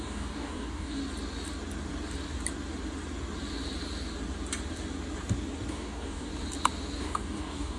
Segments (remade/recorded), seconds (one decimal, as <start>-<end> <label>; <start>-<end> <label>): 0.0-1.0 remade; 1.0-5.7 recorded; 5.7-6.3 remade; 6.3-7.0 recorded; 7.0-7.8 remade